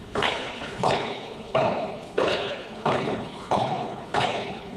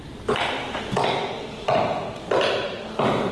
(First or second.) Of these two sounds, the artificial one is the first